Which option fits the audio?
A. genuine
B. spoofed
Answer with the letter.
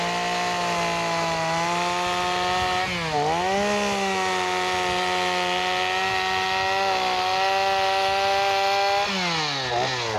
A